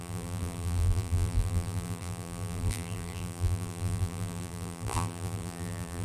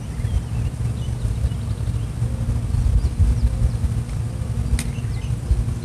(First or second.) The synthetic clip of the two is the first